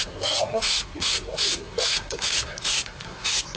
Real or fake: fake